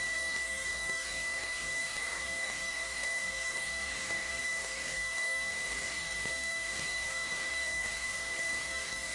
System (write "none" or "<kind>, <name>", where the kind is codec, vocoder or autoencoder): codec, DAC